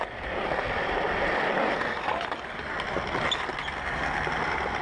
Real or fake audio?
real